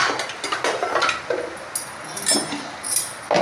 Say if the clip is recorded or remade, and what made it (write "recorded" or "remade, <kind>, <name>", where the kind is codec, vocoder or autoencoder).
recorded